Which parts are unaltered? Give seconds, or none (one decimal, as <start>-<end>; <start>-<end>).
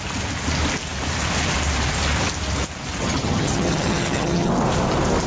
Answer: 0.0-3.0; 4.5-5.3